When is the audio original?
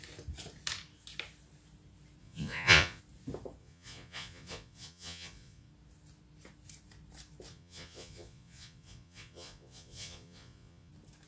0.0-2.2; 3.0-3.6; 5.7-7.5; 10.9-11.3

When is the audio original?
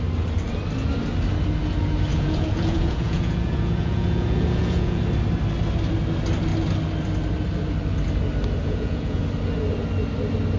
0.0-2.1; 5.0-8.6; 9.2-10.6